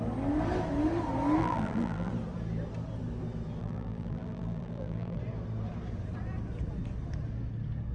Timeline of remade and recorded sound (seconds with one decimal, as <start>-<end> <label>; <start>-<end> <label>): 0.0-1.4 recorded; 1.4-2.1 remade; 2.1-3.6 recorded; 3.6-5.2 remade; 5.2-7.9 recorded